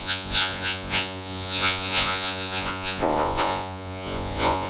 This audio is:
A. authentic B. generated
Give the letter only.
B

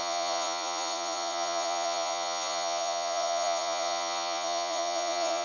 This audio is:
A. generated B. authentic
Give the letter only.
A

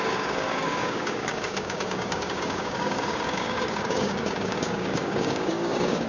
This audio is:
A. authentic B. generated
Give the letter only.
B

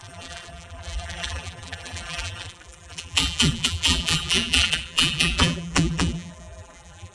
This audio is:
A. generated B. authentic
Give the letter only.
A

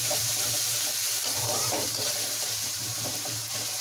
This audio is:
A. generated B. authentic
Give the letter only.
A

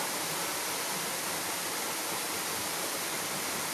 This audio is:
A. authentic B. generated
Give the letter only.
B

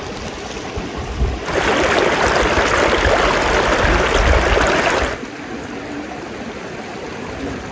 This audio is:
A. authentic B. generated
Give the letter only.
A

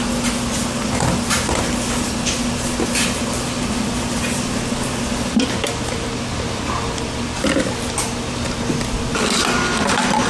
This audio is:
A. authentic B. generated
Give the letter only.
A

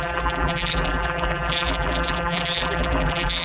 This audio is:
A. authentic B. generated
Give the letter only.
B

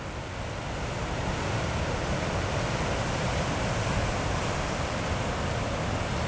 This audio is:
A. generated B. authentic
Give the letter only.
B